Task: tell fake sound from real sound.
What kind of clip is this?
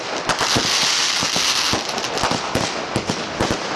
real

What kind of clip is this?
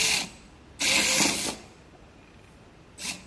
real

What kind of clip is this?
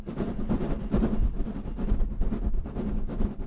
real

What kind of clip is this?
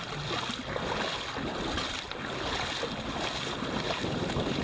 real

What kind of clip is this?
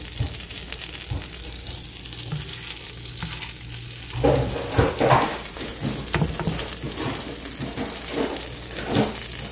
real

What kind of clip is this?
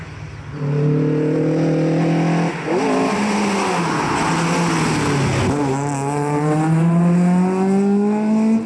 real